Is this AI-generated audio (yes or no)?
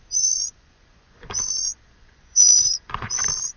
yes